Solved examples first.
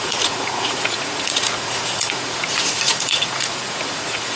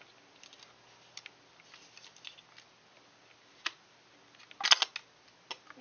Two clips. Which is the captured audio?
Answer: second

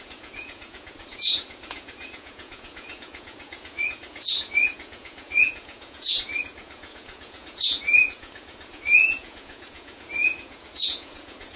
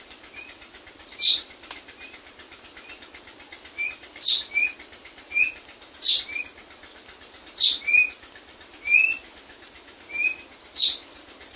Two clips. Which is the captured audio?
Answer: second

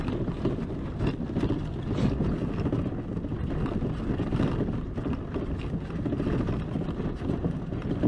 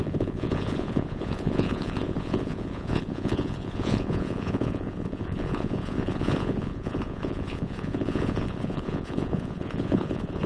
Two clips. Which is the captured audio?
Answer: first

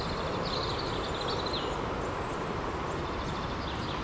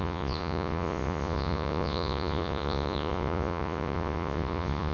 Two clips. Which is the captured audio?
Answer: first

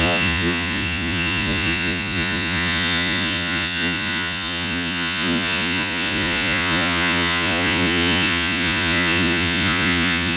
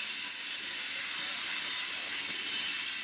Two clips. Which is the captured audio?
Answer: second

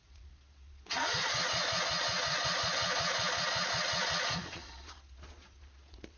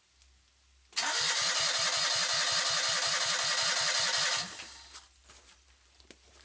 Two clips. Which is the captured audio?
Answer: second